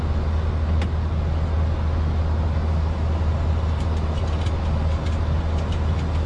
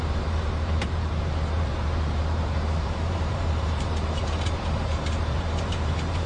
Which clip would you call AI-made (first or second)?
second